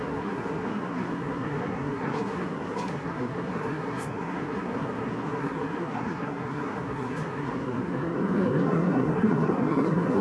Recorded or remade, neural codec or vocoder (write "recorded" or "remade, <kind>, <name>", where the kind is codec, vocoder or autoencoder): remade, codec, SNAC